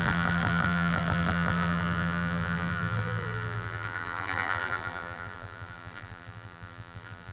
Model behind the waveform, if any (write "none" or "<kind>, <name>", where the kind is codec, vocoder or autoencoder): vocoder, BigVGAN v2